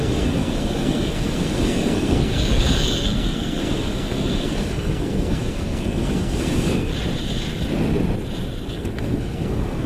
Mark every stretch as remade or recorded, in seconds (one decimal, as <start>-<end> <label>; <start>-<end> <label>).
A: 0.0-6.9 remade; 6.9-8.7 recorded; 8.7-9.9 remade